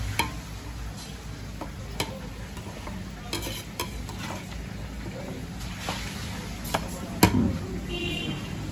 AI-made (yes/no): no